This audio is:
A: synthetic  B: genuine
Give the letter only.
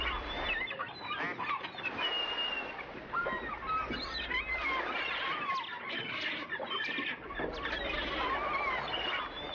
B